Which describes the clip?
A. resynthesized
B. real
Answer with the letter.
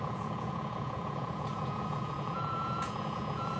A